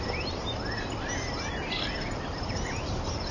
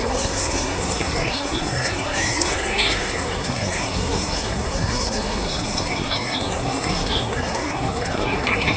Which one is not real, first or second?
second